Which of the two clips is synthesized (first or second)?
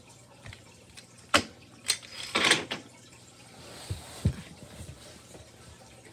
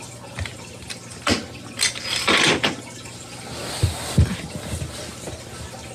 first